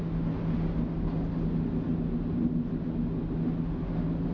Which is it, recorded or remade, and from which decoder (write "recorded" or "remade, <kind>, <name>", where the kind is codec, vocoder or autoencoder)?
recorded